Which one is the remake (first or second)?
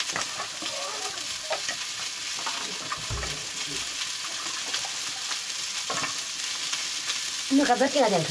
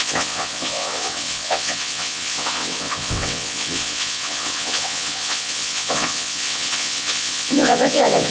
second